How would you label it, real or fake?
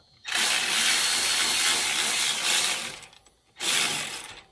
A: fake